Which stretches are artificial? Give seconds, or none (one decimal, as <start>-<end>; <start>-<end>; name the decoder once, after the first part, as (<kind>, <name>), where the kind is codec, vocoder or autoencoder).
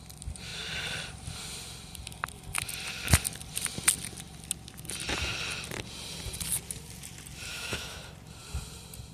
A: 7.5-8.0 (autoencoder, DAC-VAE)